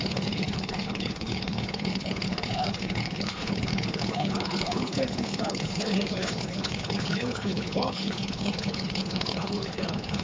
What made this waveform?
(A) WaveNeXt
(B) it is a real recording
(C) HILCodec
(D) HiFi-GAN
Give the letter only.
C